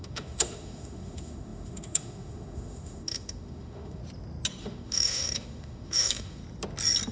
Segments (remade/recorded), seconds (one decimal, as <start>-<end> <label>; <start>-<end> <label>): 0.0-4.0 remade; 4.0-4.6 recorded; 4.6-6.4 remade; 6.4-7.1 recorded